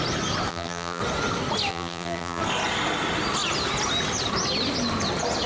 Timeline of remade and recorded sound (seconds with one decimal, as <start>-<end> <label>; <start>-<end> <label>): 0.0-0.5 recorded; 0.5-1.0 remade; 1.0-1.7 recorded; 1.7-2.4 remade; 2.4-5.5 recorded